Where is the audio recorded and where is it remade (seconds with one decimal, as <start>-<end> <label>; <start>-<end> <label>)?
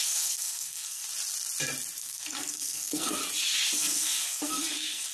0.0-1.0 remade; 1.0-2.0 recorded; 2.0-3.2 remade; 3.2-3.8 recorded; 3.8-5.1 remade